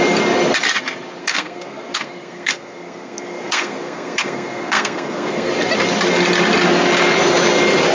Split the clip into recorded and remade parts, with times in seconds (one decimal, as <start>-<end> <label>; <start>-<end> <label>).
0.0-1.2 recorded; 1.2-5.5 remade; 5.5-7.9 recorded